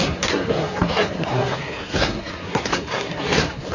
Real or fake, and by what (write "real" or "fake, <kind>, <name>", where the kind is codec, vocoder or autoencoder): fake, codec, SNAC